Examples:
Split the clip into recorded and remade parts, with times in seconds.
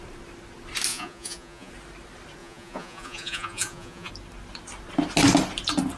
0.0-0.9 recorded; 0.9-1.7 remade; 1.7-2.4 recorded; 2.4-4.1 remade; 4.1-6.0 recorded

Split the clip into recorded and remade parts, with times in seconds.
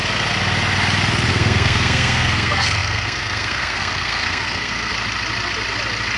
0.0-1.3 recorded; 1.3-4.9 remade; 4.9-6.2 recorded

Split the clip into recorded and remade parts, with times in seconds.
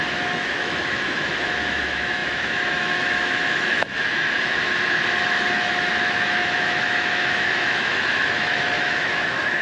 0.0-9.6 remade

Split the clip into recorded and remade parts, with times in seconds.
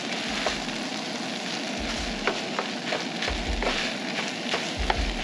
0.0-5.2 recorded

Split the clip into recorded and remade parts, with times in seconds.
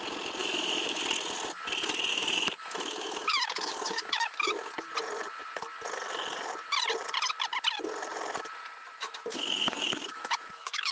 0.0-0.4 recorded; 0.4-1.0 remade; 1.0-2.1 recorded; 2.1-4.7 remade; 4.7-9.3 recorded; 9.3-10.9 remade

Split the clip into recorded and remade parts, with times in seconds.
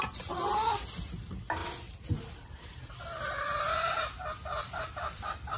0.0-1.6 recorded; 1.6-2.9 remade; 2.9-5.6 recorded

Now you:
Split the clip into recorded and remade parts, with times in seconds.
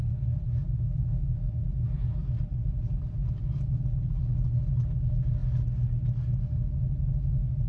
0.0-0.6 recorded; 0.6-1.5 remade; 1.5-7.7 recorded